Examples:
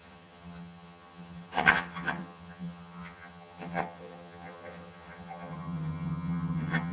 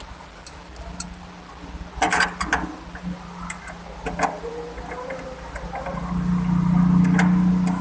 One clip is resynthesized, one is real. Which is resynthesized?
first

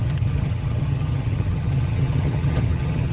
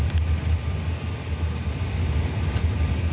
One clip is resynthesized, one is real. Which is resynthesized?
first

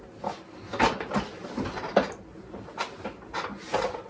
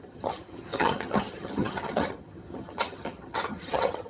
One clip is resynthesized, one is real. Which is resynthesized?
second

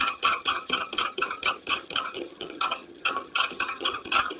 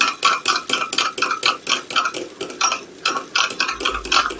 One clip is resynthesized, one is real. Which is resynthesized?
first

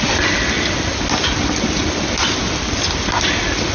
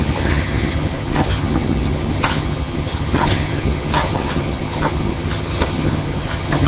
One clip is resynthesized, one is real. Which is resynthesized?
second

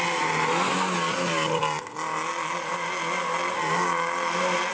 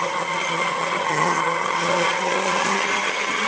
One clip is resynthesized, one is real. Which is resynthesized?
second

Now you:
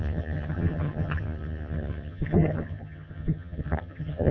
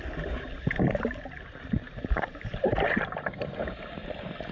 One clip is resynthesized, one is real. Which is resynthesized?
first